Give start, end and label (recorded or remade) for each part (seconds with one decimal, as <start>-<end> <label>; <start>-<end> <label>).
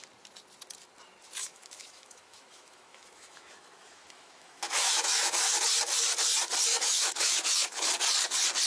0.0-1.4 recorded; 1.4-5.6 remade; 5.6-6.7 recorded; 6.7-7.9 remade; 7.9-8.7 recorded